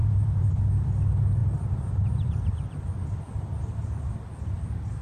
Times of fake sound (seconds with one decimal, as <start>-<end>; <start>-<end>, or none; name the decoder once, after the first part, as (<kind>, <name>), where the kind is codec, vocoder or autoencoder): 0.0-0.5 (vocoder, BigVGAN v2)